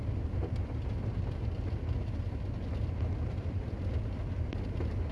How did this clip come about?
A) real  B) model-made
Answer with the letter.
A